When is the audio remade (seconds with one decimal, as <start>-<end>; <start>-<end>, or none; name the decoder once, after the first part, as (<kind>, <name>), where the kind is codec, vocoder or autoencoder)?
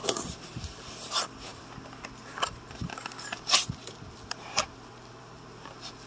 none